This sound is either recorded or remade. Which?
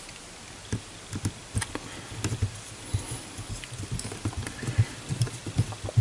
recorded